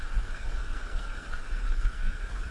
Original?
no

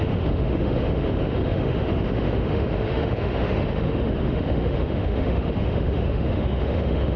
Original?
no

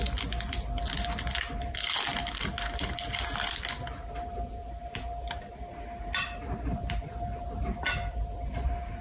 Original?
yes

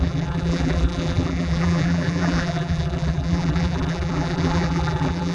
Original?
no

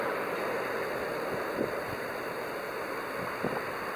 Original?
yes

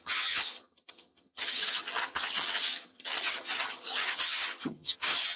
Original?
no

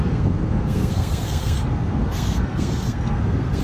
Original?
no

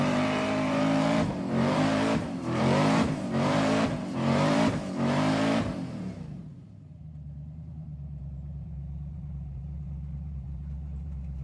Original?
no